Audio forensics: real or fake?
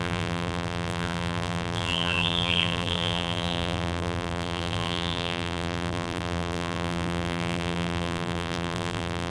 fake